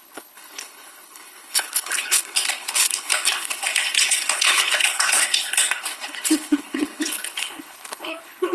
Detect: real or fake fake